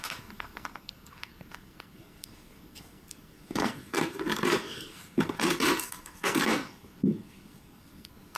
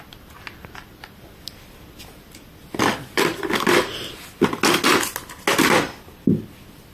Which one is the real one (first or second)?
second